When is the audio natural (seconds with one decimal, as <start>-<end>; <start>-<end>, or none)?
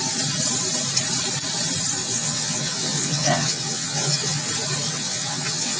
0.0-2.0; 4.5-4.9